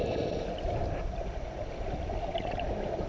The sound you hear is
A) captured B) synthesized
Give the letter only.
A